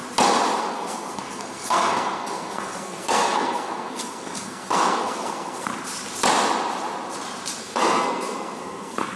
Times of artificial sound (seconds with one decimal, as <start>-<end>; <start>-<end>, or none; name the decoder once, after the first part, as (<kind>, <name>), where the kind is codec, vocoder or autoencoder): 0.6-5.7 (codec, SNAC); 7.6-9.2